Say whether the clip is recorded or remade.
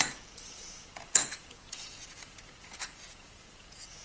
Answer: remade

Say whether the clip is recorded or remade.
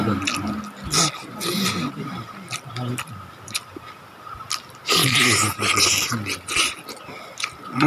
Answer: recorded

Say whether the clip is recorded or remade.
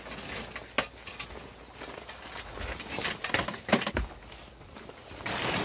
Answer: recorded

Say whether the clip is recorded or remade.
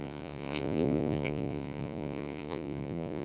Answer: remade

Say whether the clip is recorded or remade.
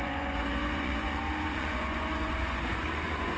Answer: remade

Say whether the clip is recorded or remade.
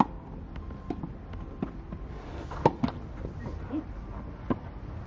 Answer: recorded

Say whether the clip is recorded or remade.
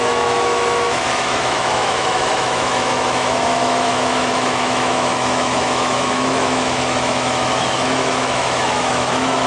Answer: remade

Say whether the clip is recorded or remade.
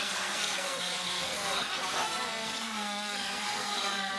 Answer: remade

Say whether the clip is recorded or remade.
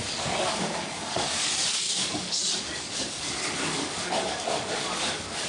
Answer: remade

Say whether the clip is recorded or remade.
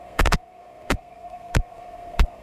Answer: remade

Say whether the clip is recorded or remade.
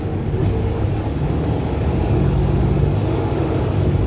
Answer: remade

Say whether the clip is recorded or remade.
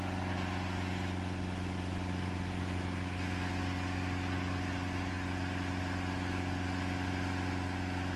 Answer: recorded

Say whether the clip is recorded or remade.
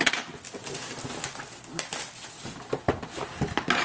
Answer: recorded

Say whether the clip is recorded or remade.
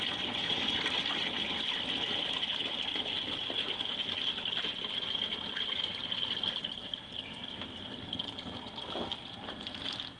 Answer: remade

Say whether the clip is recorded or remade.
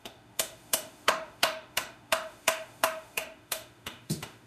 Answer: remade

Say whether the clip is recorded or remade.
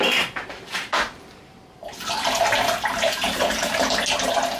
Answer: recorded